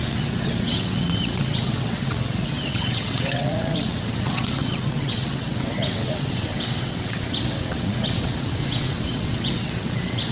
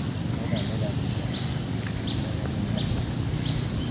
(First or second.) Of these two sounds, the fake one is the first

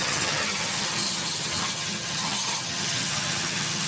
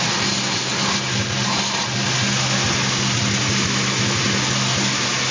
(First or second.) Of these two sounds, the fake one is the first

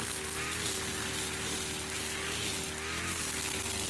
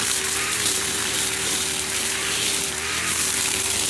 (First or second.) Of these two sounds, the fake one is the second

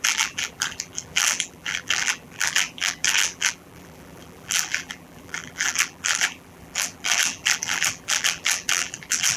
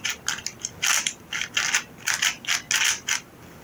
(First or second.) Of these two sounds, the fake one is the first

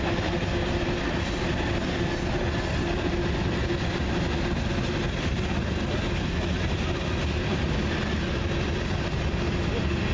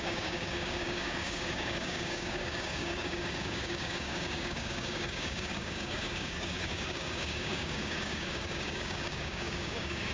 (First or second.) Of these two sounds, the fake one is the second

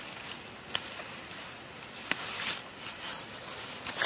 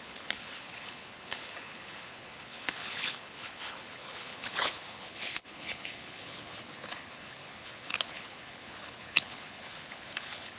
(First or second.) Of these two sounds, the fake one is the second